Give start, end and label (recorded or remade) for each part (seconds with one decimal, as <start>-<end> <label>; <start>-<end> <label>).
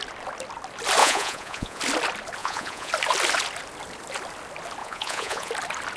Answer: 0.0-1.0 recorded; 1.0-1.8 remade; 1.8-2.4 recorded; 2.4-2.9 remade; 2.9-4.8 recorded; 4.8-5.5 remade; 5.5-6.0 recorded